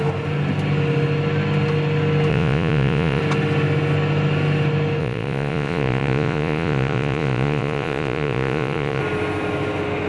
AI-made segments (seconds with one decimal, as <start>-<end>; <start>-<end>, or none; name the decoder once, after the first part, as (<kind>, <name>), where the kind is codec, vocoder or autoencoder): 2.3-3.2 (vocoder, Vocos); 5.0-9.0